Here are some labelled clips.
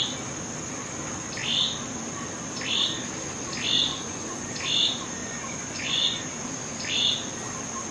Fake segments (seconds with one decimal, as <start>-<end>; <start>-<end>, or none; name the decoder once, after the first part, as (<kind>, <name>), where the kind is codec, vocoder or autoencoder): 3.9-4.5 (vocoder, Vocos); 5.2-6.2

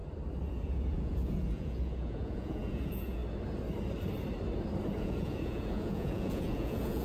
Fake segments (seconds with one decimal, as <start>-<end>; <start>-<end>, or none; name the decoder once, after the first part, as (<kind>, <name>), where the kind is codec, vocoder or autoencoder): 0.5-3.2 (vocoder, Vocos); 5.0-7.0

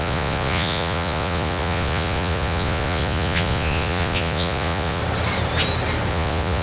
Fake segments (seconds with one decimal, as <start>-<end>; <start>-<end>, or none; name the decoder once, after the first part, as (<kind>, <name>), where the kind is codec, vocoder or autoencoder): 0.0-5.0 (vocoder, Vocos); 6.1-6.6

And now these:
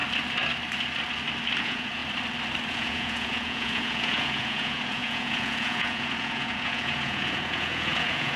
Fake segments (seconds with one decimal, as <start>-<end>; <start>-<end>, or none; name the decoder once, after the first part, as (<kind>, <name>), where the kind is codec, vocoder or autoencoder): 1.6-2.0 (vocoder, Vocos); 2.7-8.4